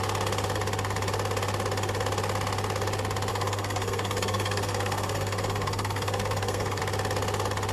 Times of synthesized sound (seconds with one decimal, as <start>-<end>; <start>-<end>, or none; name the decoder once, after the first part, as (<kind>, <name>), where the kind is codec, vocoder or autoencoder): 3.3-6.8 (codec, SNAC)